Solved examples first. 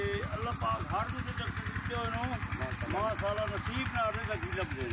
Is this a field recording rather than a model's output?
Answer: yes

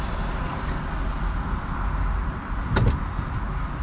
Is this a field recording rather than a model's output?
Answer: yes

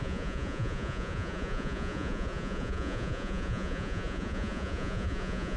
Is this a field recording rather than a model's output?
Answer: no